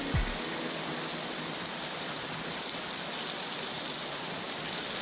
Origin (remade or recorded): recorded